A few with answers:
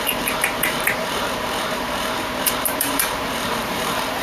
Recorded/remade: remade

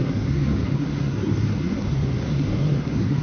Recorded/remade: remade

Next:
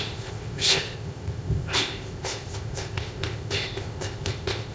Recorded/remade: remade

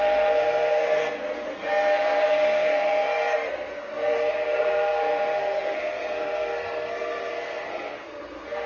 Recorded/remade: remade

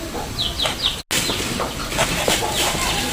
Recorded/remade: recorded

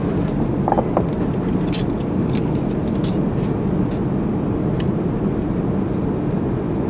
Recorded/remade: recorded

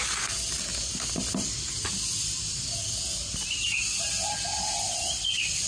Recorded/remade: recorded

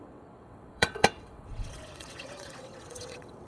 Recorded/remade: remade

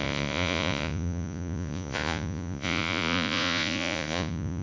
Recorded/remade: remade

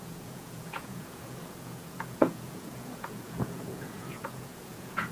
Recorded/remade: remade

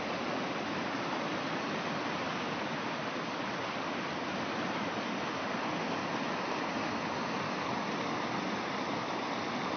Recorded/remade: recorded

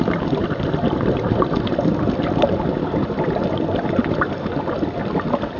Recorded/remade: recorded